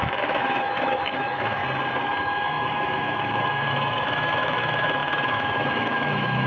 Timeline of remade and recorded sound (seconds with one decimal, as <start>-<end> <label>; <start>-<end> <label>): 0.0-1.6 remade; 1.6-2.2 recorded; 2.2-6.5 remade